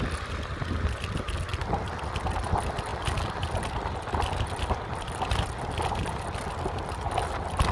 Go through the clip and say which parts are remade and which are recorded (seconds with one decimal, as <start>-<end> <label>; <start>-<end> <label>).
0.0-7.7 recorded